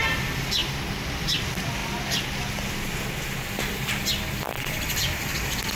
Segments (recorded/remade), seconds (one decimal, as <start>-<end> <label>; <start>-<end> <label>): 0.0-1.8 remade; 1.8-3.6 recorded; 3.6-5.8 remade